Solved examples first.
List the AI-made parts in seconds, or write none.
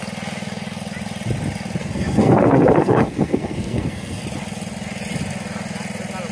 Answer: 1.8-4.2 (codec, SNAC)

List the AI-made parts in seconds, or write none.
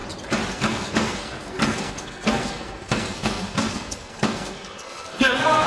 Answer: 0.5-5.7 (codec, SNAC)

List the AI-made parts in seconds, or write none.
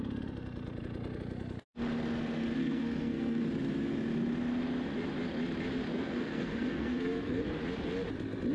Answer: 2.6-3.4 (codec, SNAC); 5.9-7.4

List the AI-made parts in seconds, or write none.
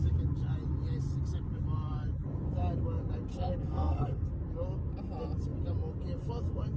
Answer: 3.3-4.3 (codec, SNAC)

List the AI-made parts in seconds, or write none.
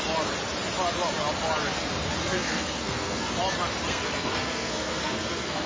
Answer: 2.2-3.3 (codec, SNAC); 3.9-5.7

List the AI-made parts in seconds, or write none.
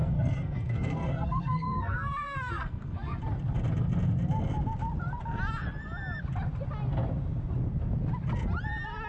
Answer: 0.0-3.2 (codec, SNAC)